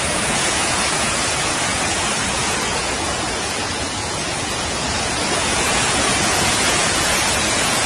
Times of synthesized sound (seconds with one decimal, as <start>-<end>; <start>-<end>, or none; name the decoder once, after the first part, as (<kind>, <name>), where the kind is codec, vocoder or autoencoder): 0.0-7.9 (vocoder, Vocos)